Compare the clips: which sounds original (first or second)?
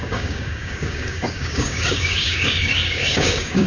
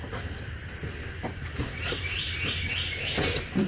second